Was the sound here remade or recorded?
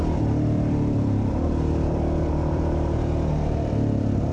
remade